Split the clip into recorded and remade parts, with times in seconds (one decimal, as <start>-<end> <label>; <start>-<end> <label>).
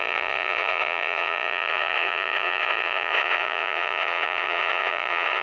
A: 0.0-5.4 remade